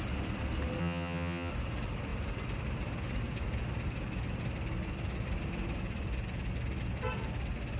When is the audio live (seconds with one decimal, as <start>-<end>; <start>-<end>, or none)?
0.0-0.8; 1.5-7.8

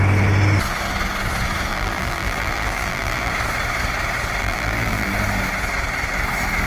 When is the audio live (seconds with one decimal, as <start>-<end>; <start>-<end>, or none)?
0.0-1.7; 3.3-4.4; 5.1-6.7

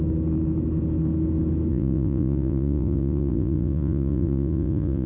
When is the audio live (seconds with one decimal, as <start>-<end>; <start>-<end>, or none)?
0.0-1.7

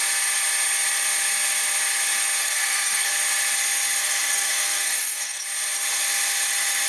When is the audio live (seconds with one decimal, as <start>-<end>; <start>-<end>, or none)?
0.0-2.4; 3.1-4.0; 5.4-6.9